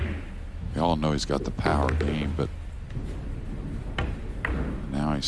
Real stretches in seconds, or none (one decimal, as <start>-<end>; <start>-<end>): 0.0-5.3